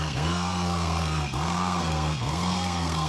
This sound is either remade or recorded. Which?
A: remade